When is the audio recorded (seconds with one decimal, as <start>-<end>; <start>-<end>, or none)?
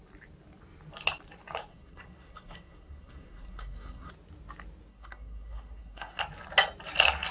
0.0-1.7; 4.1-4.9; 6.2-7.3